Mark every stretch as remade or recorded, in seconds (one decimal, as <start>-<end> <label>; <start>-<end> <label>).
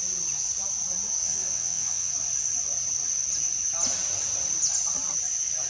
0.0-1.2 recorded; 1.2-2.1 remade; 2.1-5.7 recorded